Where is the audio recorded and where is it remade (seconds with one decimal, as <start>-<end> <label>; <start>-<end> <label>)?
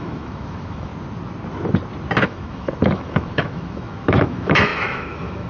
0.0-0.9 remade; 0.9-2.2 recorded; 2.2-5.5 remade